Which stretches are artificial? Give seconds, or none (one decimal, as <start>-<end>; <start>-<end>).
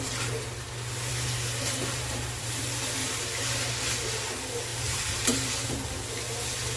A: 1.1-2.6; 3.0-3.7; 4.7-6.2